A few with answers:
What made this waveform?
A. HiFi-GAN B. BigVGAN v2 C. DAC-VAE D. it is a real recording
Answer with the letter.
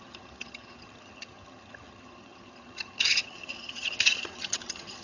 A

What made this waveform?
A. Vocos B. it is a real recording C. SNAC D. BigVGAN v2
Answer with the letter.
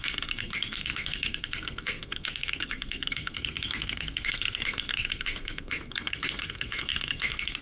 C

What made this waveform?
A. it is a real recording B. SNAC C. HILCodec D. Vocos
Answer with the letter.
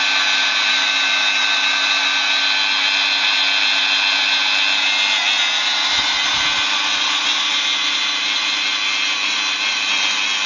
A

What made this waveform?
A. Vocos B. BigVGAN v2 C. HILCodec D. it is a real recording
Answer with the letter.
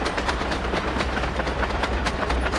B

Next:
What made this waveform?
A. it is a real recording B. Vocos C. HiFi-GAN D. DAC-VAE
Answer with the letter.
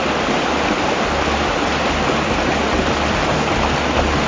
A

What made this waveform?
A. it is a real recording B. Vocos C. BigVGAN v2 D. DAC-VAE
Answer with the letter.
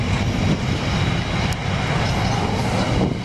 A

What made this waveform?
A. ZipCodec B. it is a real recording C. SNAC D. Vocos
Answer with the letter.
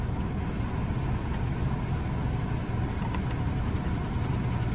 B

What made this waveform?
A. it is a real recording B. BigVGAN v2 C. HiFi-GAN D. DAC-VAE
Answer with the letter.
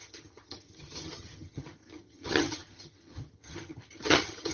C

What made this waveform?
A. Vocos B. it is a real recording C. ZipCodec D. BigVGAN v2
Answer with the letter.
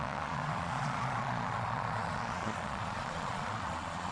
A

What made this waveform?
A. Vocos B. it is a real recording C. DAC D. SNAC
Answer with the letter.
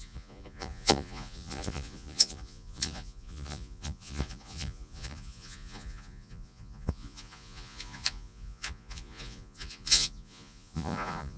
A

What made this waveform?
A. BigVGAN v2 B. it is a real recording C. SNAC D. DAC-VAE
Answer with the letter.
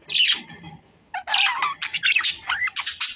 B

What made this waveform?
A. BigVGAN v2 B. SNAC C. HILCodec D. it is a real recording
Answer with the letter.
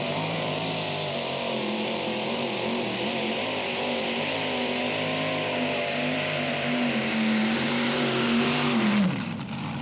A